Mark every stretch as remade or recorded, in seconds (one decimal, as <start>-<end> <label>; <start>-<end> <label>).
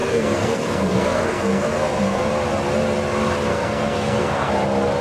0.0-2.3 remade; 2.3-3.5 recorded; 3.5-4.5 remade; 4.5-5.0 recorded